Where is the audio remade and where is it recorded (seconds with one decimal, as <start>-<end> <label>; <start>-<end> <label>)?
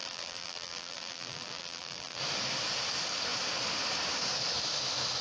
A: 0.0-2.2 remade; 2.2-5.2 recorded